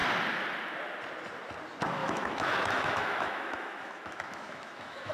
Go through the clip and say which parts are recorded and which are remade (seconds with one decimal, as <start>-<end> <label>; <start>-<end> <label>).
0.0-2.0 recorded; 2.0-5.1 remade